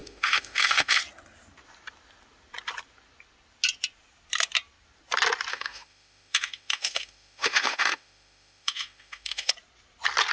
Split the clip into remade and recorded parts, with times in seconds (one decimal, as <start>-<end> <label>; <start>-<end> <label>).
0.0-1.0 remade; 1.0-5.5 recorded; 5.5-9.5 remade; 9.5-10.3 recorded

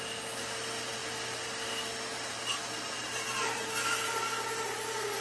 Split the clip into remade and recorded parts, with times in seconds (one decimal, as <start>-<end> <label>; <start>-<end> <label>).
0.0-5.2 recorded

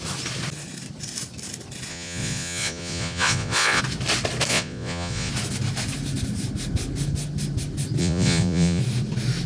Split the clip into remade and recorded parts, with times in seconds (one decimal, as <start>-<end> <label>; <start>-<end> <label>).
0.0-1.9 recorded; 1.9-3.8 remade; 3.8-4.5 recorded; 4.5-5.3 remade; 5.3-8.0 recorded; 8.0-8.8 remade; 8.8-9.5 recorded

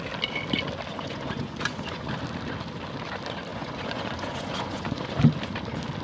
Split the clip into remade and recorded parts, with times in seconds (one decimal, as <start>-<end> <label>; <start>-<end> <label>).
0.0-0.9 recorded; 0.9-2.1 remade; 2.1-3.5 recorded; 3.5-5.2 remade; 5.2-6.0 recorded

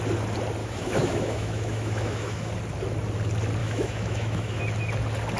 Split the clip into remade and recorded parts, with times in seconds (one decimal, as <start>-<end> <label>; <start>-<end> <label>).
0.0-0.6 recorded; 0.6-2.5 remade; 2.5-3.6 recorded; 3.6-4.6 remade; 4.6-5.4 recorded

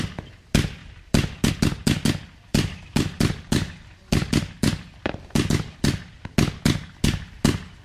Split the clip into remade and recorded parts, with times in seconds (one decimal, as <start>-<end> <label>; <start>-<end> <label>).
0.0-2.5 recorded; 2.5-6.2 remade; 6.2-7.8 recorded

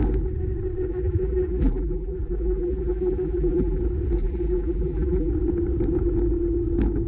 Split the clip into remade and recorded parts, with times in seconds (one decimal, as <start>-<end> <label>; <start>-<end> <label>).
0.0-0.9 recorded; 0.9-3.8 remade; 3.8-4.2 recorded; 4.2-5.3 remade; 5.3-7.1 recorded